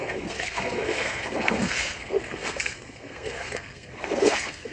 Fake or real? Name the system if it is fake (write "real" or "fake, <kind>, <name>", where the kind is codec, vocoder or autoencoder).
fake, codec, SNAC